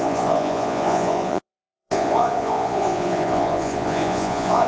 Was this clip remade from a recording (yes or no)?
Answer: yes